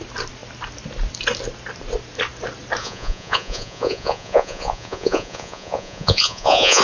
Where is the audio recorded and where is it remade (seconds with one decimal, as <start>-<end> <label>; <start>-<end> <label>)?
0.0-2.8 recorded; 2.8-6.8 remade